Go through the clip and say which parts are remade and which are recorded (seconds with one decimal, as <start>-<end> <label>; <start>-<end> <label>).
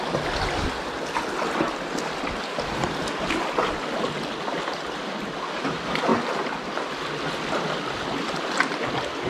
0.0-9.3 recorded